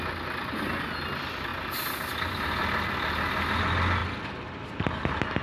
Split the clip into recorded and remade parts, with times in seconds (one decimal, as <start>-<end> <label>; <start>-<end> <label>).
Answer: 0.0-4.0 recorded; 4.0-4.7 remade; 4.7-5.4 recorded